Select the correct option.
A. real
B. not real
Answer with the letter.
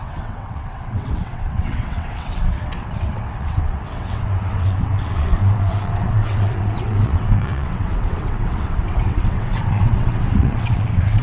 B